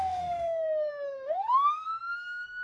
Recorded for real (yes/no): no